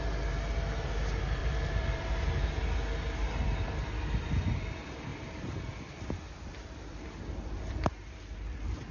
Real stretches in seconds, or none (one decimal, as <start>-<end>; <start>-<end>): 0.0-1.4; 2.0-5.1; 8.1-8.9